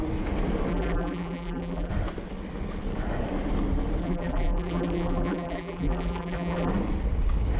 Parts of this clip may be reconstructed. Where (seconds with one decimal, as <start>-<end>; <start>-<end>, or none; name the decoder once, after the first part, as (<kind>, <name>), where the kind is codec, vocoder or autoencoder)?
0.7-1.9 (vocoder, BigVGAN v2); 4.0-6.7